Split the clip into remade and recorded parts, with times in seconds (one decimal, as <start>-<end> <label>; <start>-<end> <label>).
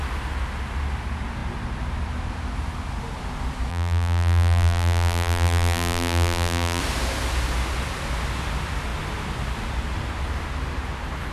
0.0-3.7 recorded; 3.7-6.8 remade; 6.8-11.3 recorded